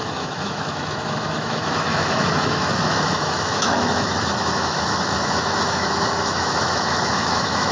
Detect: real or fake fake